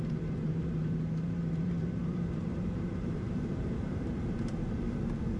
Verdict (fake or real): fake